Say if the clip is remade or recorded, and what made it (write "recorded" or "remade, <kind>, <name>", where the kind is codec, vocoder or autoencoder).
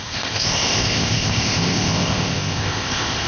remade, codec, ZipCodec